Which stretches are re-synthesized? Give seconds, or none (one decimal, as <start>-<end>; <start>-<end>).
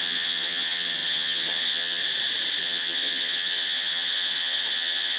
0.0-2.0; 2.6-5.2